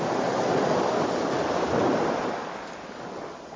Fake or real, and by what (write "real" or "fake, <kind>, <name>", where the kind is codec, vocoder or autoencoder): real